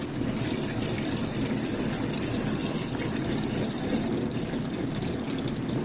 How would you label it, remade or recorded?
recorded